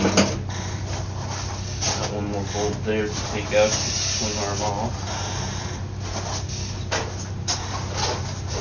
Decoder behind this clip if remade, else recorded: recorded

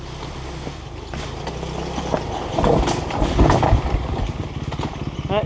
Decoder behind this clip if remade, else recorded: recorded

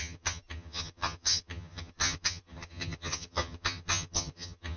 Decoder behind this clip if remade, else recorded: remade, vocoder, HiFi-GAN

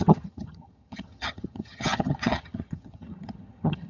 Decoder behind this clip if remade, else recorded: remade, vocoder, HiFi-GAN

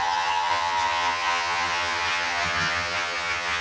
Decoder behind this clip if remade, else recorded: remade, vocoder, HiFi-GAN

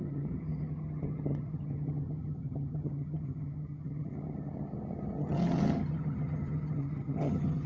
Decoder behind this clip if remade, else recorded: remade, vocoder, HiFi-GAN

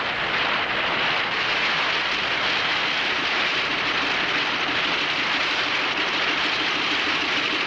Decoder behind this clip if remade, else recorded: recorded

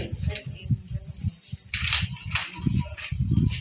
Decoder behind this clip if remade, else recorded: recorded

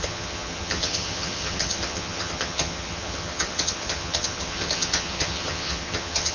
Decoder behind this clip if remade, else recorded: remade, vocoder, HiFi-GAN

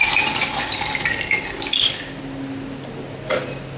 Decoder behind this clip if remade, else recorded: recorded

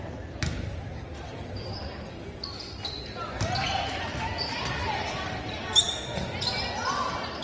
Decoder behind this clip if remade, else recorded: recorded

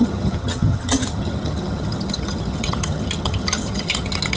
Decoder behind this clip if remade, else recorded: remade, vocoder, HiFi-GAN